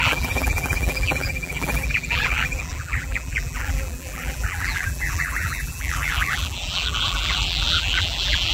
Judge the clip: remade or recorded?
remade